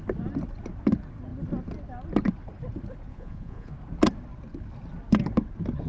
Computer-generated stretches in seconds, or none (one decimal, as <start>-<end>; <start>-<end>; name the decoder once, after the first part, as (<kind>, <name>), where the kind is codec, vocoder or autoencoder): 3.1-3.7 (vocoder, Vocos)